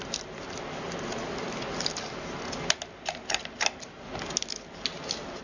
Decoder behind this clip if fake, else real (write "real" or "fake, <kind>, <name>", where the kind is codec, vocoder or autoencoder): real